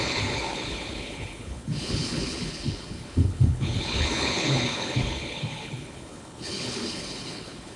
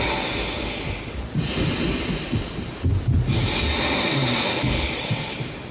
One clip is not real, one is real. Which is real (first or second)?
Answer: second